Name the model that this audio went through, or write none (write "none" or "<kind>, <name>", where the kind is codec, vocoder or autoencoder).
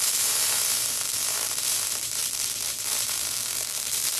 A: vocoder, BigVGAN v2